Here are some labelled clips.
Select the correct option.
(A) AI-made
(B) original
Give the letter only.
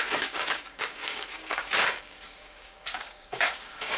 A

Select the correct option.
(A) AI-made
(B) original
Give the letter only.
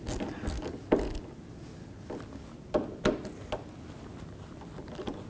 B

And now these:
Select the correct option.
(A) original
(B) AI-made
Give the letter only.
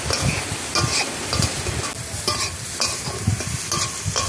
A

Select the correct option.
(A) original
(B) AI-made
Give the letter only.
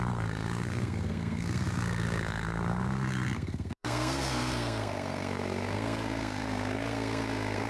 B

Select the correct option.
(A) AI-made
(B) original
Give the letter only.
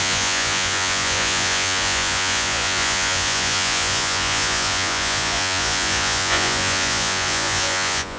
A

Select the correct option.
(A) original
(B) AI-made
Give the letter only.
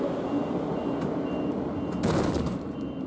A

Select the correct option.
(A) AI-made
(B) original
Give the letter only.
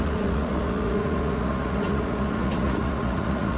A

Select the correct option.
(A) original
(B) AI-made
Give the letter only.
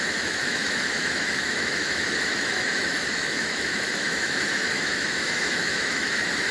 B